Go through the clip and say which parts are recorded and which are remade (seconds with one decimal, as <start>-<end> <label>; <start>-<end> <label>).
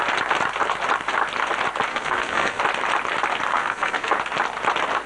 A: 0.0-1.9 recorded; 1.9-2.6 remade; 2.6-3.5 recorded; 3.5-4.1 remade; 4.1-5.1 recorded